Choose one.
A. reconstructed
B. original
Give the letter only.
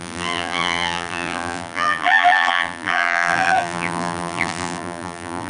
A